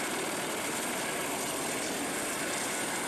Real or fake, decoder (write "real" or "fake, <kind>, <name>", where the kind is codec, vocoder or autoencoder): real